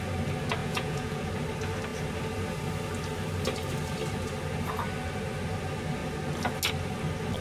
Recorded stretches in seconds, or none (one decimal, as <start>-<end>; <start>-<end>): 0.0-0.6; 1.3-7.4